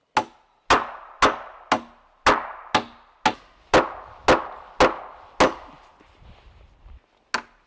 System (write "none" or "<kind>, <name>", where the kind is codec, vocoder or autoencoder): none